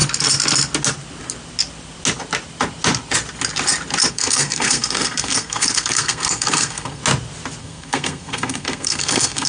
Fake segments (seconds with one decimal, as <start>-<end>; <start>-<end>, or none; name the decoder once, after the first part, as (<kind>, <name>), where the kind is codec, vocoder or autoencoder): 4.1-7.0 (codec, SNAC); 7.6-9.5